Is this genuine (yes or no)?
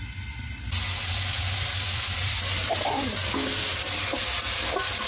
yes